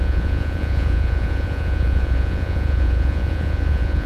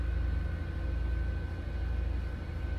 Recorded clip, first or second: second